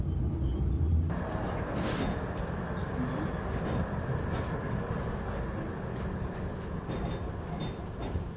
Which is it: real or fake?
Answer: real